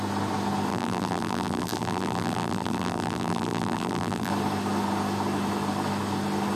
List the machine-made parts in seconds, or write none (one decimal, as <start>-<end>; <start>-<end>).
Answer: 0.7-4.3

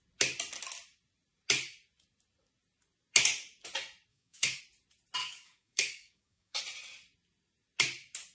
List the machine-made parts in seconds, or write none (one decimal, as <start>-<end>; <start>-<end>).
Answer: 4.1-4.6; 5.2-6.6

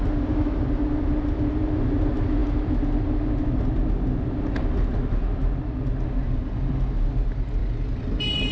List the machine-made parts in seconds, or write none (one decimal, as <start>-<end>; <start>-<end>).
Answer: none

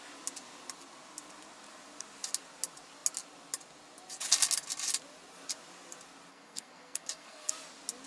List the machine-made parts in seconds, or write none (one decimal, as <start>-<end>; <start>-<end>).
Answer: 6.3-7.5

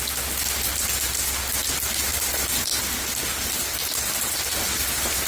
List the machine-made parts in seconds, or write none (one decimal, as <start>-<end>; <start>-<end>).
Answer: none